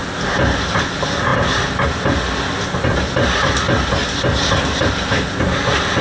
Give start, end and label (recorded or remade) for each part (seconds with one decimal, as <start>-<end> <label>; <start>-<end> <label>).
0.0-6.0 recorded